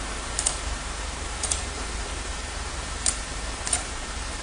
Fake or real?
fake